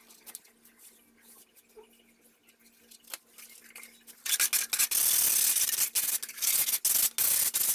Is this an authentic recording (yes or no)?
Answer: yes